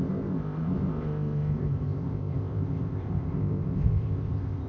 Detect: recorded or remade remade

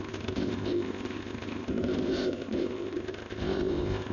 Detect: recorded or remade remade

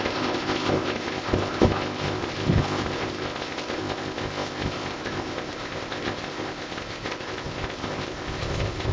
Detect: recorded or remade remade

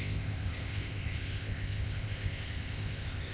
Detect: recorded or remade remade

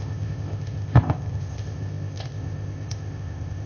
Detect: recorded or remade remade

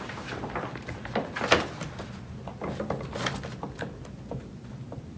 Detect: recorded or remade recorded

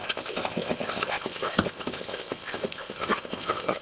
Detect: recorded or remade remade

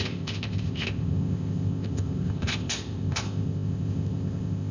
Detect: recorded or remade remade